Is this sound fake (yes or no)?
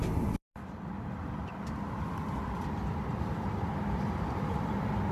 yes